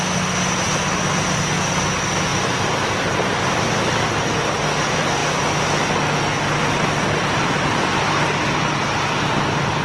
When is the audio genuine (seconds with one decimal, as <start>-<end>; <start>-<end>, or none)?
0.0-9.8